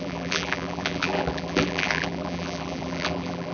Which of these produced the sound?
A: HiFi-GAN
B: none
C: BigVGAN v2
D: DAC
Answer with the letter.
C